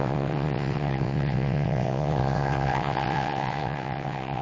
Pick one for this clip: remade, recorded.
remade